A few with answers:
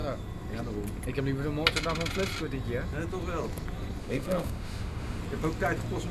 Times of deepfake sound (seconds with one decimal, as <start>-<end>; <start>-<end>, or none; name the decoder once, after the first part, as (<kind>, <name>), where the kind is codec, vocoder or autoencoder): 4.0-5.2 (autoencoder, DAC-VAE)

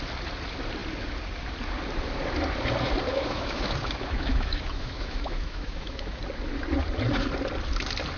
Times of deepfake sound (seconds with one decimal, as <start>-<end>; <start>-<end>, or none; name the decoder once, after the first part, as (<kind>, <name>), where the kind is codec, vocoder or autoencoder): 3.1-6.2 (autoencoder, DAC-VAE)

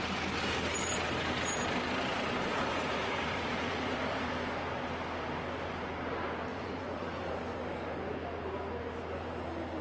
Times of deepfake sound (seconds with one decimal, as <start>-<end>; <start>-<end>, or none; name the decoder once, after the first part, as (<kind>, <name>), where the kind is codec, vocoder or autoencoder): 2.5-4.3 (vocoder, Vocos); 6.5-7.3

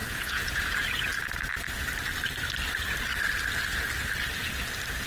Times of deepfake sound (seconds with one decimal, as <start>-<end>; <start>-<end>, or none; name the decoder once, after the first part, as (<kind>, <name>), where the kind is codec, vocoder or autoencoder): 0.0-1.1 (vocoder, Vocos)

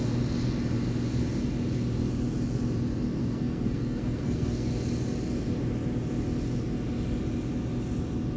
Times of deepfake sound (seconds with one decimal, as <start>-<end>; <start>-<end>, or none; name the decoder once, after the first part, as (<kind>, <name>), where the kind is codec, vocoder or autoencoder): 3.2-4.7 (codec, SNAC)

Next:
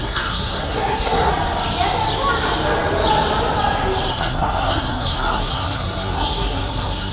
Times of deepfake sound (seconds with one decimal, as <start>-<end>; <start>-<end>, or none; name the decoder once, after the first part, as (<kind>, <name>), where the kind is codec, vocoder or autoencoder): 0.0-1.3 (codec, SNAC); 4.1-7.1